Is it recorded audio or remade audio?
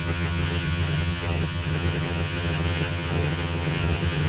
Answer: remade